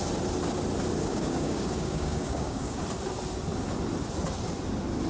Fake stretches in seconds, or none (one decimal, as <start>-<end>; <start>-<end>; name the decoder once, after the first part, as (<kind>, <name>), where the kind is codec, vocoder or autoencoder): 1.1-2.8 (codec, DAC)